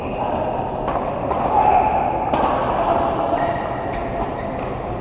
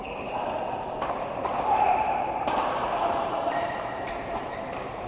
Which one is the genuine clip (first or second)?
first